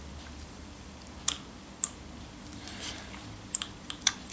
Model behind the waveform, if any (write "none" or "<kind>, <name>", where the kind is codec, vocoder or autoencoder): none